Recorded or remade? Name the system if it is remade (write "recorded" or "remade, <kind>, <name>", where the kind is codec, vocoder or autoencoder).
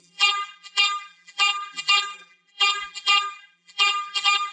remade, vocoder, BigVGAN v2